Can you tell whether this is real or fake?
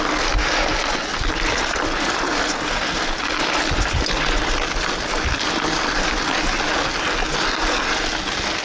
real